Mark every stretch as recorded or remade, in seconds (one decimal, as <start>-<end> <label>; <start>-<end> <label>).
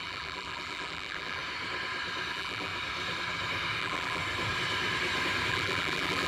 0.0-1.4 remade; 1.4-2.3 recorded; 2.3-2.7 remade; 2.7-3.8 recorded; 3.8-4.2 remade; 4.2-5.5 recorded; 5.5-6.3 remade